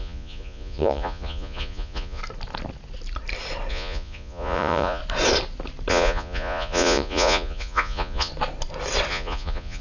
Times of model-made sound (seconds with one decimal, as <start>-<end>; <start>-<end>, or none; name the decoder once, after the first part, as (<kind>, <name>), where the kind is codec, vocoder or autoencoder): 0.0-2.2 (vocoder, Vocos); 3.7-5.0; 5.9-8.3; 9.1-9.8